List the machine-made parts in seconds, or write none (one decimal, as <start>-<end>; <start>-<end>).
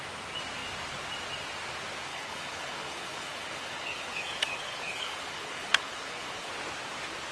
2.1-6.5